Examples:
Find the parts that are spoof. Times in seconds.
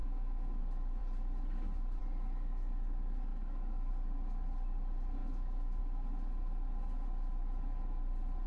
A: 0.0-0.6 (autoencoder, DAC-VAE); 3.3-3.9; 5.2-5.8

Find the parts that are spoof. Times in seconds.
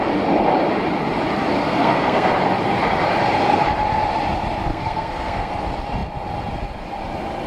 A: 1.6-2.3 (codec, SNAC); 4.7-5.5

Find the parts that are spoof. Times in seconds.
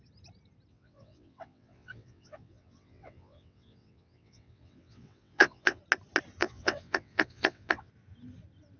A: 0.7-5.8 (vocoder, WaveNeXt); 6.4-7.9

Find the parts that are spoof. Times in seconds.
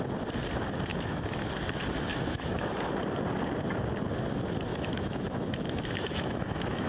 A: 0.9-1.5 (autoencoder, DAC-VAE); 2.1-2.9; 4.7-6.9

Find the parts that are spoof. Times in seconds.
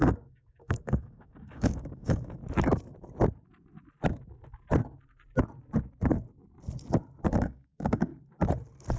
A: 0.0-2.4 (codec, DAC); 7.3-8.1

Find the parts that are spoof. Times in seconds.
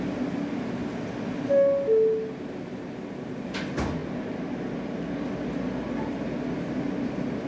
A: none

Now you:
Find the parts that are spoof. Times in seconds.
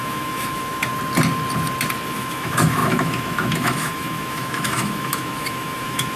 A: 0.0-0.9 (autoencoder, DAC-VAE); 2.1-6.2